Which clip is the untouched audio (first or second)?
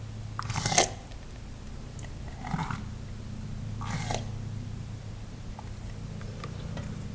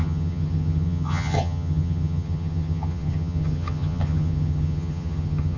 first